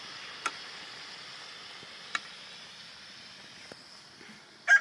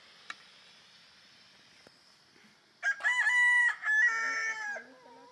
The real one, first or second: second